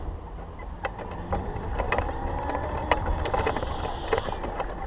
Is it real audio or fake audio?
real